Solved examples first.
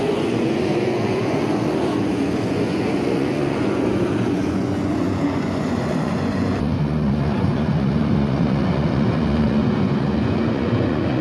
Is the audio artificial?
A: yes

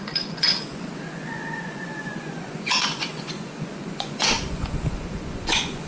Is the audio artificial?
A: yes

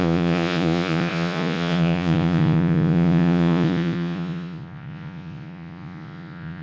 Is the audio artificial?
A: yes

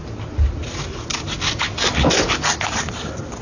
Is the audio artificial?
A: no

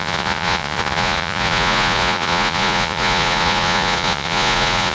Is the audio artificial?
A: yes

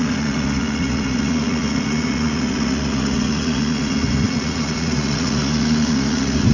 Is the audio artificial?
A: yes